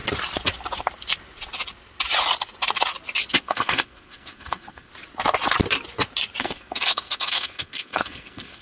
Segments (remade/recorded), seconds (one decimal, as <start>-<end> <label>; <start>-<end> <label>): 0.0-3.4 recorded; 3.4-4.9 remade; 4.9-6.4 recorded; 6.4-8.6 remade